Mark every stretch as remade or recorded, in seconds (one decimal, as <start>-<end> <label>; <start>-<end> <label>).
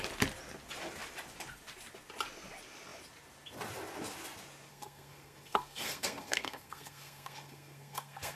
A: 0.0-4.7 recorded; 4.7-8.4 remade